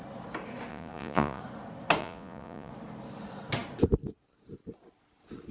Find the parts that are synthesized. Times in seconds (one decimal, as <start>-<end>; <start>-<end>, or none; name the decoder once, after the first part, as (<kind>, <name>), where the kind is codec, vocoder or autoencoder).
0.7-1.4 (vocoder, Vocos); 2.0-2.7